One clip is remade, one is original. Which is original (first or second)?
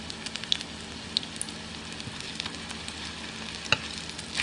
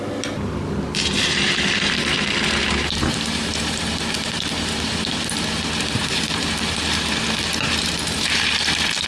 first